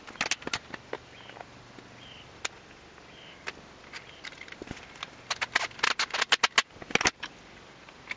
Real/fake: real